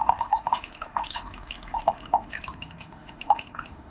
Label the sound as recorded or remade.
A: remade